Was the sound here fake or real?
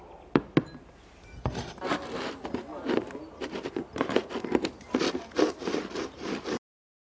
real